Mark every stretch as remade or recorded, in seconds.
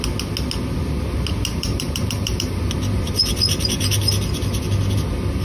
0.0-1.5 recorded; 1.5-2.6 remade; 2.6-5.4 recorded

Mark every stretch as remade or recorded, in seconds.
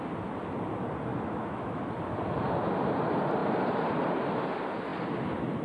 0.0-1.1 recorded; 1.1-1.9 remade; 1.9-5.6 recorded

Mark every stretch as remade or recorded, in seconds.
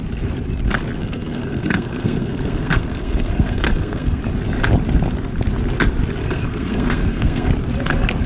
0.0-1.0 recorded; 1.0-4.2 remade; 4.2-6.2 recorded; 6.2-7.5 remade; 7.5-8.3 recorded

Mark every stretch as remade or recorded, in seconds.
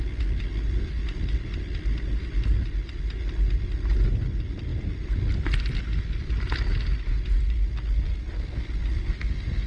0.0-9.7 recorded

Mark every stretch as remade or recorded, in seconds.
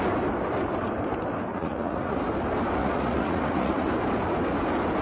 0.0-1.5 recorded; 1.5-2.2 remade; 2.2-2.8 recorded; 2.8-3.9 remade; 3.9-5.0 recorded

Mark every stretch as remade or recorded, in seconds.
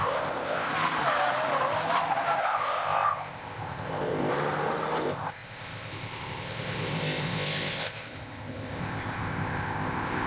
0.0-0.7 remade; 0.7-2.4 recorded; 2.4-4.3 remade; 4.3-5.0 recorded; 5.0-10.3 remade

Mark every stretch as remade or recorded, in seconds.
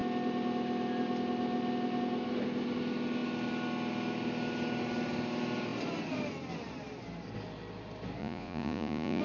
0.0-8.2 recorded; 8.2-9.2 remade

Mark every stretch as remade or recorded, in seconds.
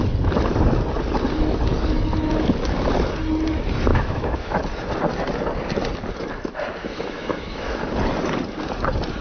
0.0-3.9 recorded; 3.9-4.6 remade; 4.6-6.8 recorded; 6.8-7.8 remade; 7.8-9.2 recorded